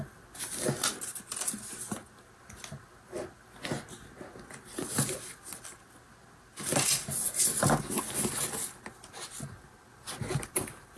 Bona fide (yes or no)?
yes